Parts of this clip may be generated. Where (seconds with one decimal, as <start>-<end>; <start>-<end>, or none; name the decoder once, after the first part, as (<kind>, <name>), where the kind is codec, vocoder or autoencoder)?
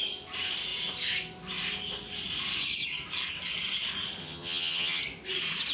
4.2-5.0 (vocoder, HiFi-GAN)